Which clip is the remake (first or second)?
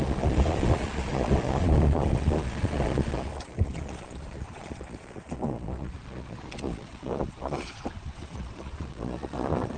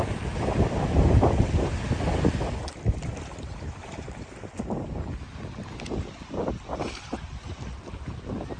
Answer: first